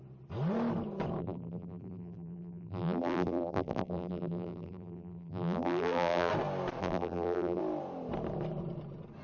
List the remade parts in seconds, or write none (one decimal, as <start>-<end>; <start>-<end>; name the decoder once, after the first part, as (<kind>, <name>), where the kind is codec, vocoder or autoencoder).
1.2-6.3 (vocoder, BigVGAN v2); 6.8-7.6

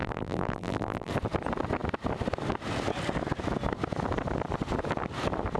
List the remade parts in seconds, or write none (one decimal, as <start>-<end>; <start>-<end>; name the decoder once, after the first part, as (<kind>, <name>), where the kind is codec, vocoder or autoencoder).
0.0-1.1 (vocoder, BigVGAN v2)

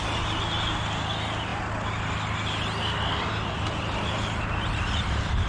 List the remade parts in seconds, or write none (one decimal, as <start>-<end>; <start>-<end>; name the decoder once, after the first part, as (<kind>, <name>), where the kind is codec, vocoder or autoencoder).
none

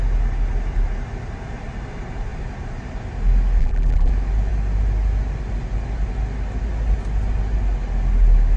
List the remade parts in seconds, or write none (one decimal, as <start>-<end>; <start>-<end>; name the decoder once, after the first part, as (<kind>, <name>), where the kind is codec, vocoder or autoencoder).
3.6-4.1 (vocoder, BigVGAN v2)

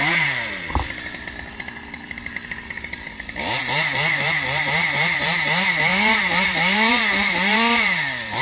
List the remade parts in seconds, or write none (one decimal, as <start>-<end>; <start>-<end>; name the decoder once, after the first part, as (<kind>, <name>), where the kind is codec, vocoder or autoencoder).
0.0-8.4 (vocoder, BigVGAN v2)

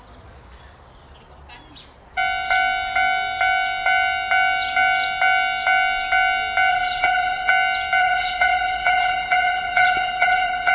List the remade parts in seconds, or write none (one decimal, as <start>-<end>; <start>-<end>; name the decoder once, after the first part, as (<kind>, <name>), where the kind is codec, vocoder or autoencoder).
6.7-7.5 (vocoder, BigVGAN v2); 8.0-10.7

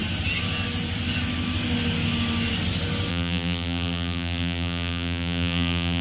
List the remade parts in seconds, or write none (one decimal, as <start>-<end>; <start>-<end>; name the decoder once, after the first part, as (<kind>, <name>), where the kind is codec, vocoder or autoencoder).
3.1-6.0 (vocoder, BigVGAN v2)

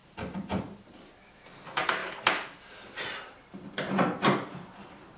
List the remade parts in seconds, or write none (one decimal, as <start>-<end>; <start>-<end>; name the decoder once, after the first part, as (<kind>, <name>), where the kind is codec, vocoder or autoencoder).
0.0-0.6 (vocoder, BigVGAN v2); 2.0-5.2